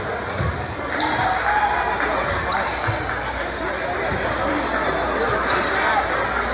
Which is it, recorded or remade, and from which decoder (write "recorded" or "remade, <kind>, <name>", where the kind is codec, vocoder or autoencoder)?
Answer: recorded